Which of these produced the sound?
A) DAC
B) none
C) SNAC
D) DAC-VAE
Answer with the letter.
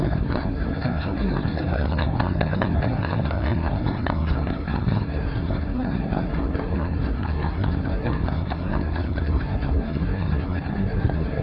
C